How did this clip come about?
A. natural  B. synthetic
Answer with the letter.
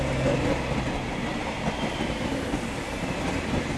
A